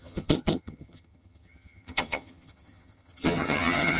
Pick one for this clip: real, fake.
fake